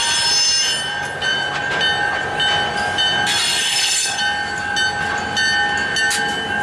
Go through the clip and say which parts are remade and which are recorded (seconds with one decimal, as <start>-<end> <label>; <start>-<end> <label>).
0.0-3.6 recorded; 3.6-4.2 remade; 4.2-6.6 recorded